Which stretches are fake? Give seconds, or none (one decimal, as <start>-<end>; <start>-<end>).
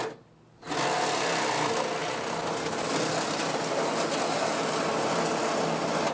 none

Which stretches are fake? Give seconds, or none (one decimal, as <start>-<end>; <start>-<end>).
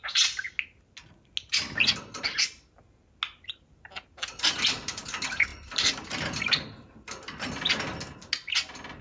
none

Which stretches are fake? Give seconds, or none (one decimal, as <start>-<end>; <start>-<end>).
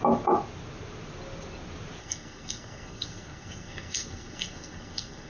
2.0-5.3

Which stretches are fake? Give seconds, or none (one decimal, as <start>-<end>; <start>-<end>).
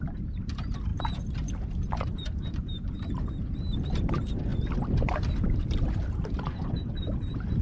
0.0-0.9; 2.1-7.6